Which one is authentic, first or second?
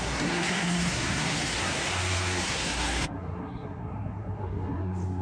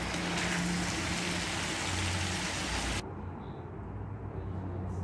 second